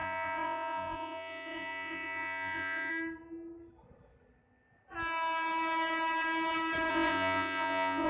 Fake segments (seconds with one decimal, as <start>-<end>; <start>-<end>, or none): 0.0-2.9; 6.9-8.1